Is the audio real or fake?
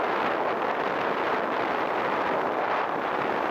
real